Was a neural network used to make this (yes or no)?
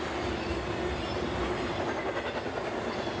no